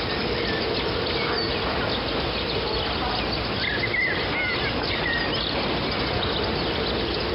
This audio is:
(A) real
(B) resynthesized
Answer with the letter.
A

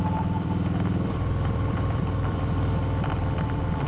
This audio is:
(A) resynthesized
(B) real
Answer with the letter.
A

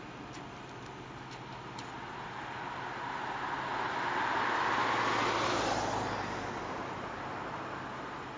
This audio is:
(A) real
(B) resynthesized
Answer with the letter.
A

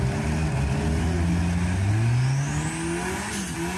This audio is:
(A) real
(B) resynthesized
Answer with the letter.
A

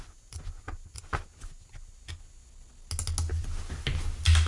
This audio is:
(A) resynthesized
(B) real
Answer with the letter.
B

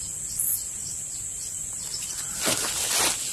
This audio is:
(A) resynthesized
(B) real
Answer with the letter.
B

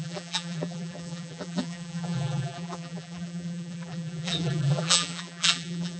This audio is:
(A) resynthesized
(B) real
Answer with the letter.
A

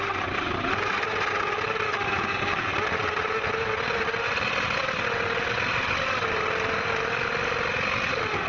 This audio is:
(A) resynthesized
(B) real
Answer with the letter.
B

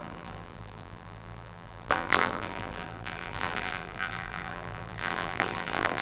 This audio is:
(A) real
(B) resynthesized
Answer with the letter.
B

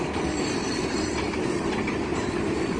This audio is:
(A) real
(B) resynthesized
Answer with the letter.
B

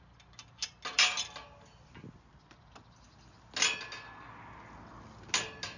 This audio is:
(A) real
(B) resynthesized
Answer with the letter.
A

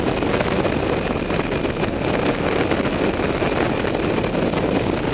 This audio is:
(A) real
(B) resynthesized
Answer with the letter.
A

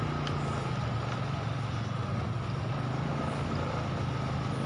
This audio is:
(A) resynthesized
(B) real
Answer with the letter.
B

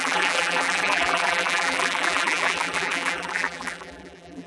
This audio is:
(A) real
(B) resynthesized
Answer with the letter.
B